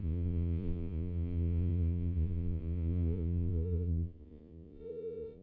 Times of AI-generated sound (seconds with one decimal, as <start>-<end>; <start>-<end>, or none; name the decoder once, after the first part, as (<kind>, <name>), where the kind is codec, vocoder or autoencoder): 0.0-5.4 (vocoder, Vocos)